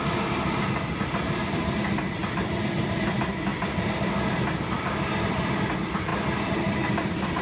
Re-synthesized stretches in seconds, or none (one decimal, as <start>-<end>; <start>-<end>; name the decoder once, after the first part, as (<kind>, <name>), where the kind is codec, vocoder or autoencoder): none